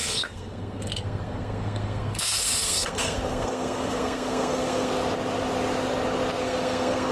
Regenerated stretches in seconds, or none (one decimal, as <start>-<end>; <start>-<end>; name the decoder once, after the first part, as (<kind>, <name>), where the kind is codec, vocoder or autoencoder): 0.0-4.9 (codec, SNAC); 6.4-7.1